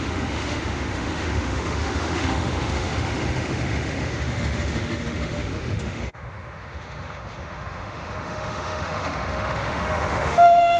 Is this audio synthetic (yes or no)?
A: yes